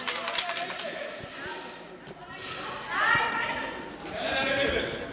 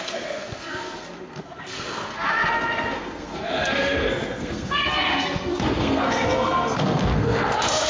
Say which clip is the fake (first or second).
second